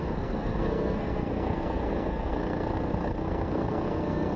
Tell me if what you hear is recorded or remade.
remade